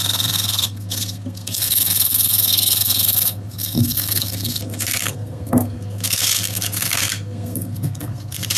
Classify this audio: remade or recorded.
remade